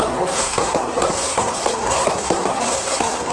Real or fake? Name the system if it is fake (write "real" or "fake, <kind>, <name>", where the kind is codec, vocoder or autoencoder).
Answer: fake, codec, SNAC